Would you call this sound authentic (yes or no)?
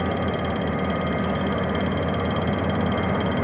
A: yes